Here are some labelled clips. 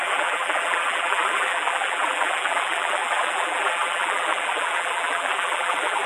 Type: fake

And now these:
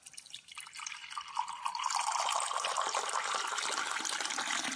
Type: real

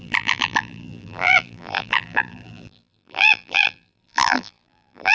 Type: fake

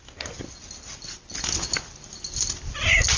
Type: real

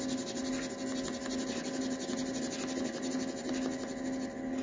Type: real